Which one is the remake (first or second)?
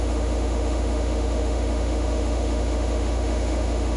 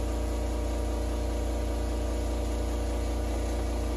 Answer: first